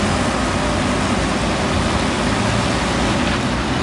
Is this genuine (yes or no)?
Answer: yes